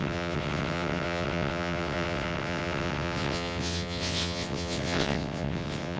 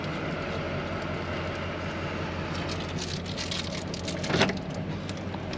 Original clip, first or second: second